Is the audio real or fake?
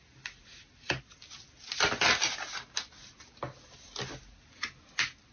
real